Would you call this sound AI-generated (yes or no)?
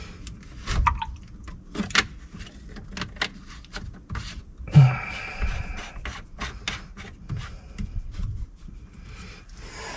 no